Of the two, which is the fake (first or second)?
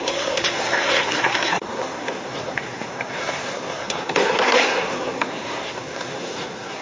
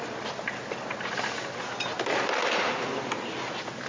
first